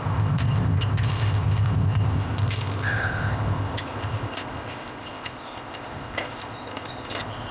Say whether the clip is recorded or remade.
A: remade